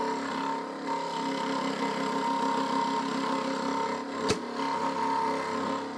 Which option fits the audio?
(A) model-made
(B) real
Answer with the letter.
B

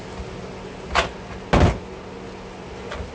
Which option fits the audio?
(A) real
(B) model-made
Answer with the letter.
A